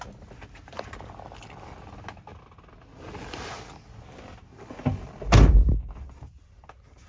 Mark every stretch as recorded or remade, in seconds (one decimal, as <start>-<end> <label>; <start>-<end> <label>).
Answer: 0.0-7.1 recorded